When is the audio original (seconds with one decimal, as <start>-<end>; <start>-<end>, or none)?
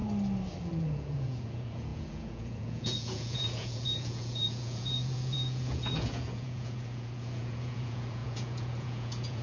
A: 0.0-0.6